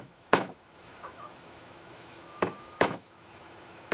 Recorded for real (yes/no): no